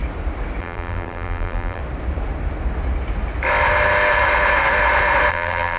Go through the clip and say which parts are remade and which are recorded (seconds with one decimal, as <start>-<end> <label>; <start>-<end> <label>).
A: 0.0-0.6 recorded; 0.6-1.8 remade; 1.8-5.3 recorded; 5.3-5.8 remade